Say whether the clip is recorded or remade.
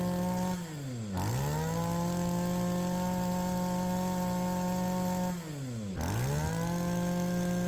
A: recorded